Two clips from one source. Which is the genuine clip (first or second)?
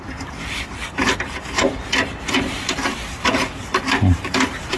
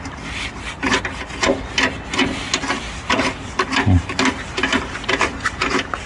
second